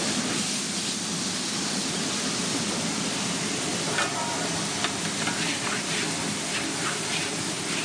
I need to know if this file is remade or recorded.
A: recorded